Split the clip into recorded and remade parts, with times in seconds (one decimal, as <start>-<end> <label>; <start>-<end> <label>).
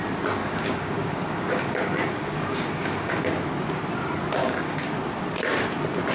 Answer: 0.0-0.4 recorded; 0.4-3.2 remade; 3.2-4.4 recorded; 4.4-4.9 remade; 4.9-6.1 recorded